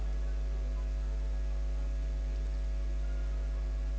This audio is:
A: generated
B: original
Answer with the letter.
B